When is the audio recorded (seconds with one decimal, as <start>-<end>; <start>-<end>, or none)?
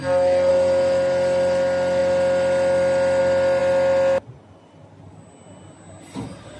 0.0-6.6